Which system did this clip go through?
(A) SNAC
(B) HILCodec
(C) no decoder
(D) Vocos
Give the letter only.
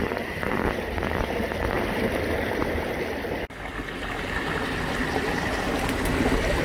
C